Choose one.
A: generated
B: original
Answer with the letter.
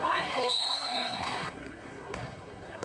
A